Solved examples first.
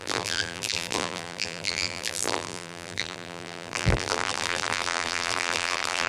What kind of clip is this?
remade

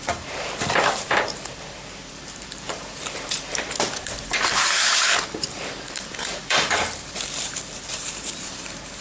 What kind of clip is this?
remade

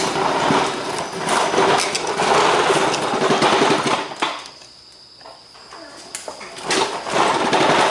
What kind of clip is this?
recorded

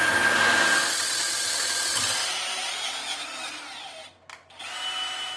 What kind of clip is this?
recorded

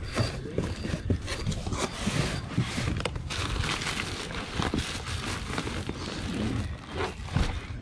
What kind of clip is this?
recorded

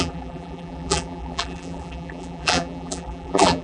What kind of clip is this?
remade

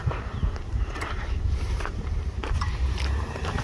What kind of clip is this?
remade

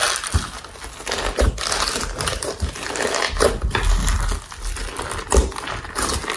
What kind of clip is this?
recorded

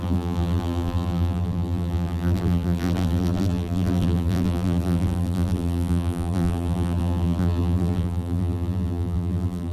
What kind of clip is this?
remade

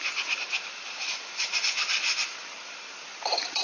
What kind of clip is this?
remade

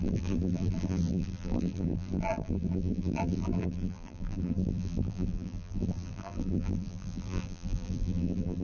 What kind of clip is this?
remade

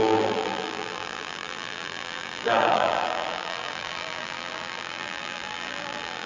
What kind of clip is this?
remade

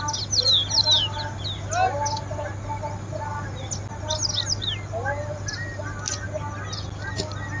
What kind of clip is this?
recorded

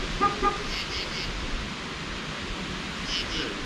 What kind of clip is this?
recorded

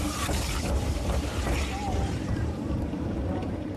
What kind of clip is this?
remade